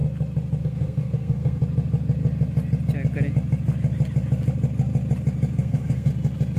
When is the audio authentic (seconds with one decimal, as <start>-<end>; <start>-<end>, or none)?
0.0-0.6; 1.6-5.6; 6.1-6.6